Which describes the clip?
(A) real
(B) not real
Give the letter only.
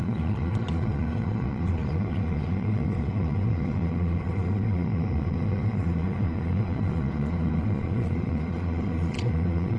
B